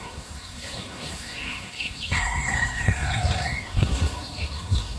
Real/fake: fake